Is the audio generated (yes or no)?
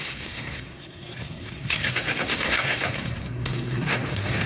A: yes